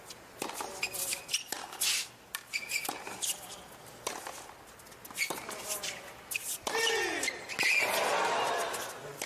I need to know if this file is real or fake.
real